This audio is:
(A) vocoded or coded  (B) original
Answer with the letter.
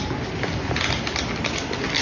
B